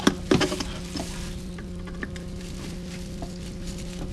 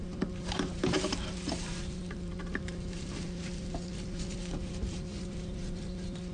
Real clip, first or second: first